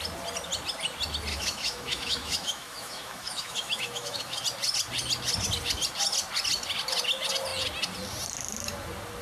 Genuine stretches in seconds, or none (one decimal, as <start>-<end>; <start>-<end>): 0.0-1.3; 4.4-9.2